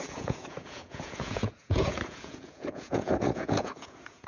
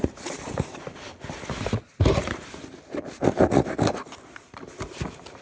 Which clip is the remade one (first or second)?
first